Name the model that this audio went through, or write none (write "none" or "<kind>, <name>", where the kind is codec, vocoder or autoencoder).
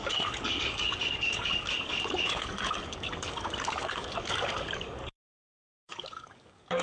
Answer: codec, DAC